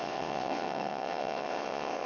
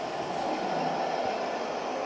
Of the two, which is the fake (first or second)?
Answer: first